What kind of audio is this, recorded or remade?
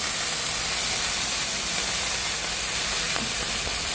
recorded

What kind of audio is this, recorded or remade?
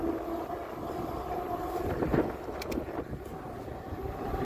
recorded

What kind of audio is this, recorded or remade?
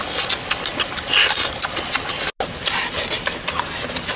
recorded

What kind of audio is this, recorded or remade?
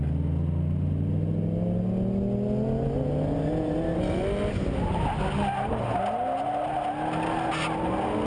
recorded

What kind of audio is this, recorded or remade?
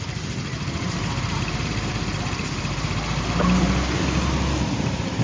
recorded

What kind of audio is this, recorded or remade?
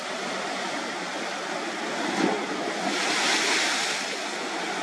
recorded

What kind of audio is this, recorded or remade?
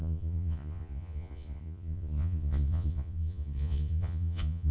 remade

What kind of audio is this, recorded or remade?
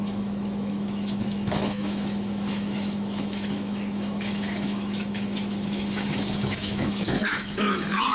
remade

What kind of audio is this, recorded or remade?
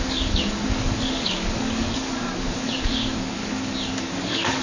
remade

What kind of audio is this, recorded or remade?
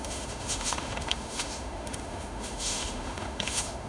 remade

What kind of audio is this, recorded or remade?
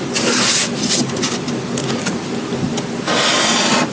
recorded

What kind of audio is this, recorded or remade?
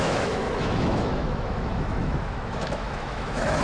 remade